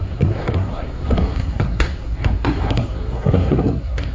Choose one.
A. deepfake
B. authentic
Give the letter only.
A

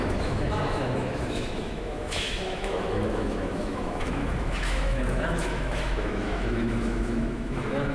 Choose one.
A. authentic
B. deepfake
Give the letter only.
B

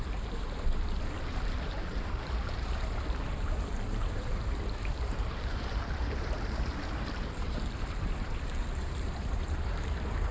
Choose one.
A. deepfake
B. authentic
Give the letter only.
A